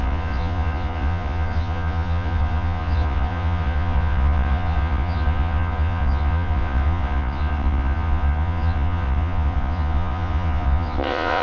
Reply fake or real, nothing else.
fake